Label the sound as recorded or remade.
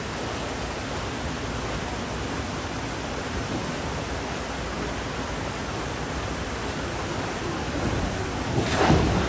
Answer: recorded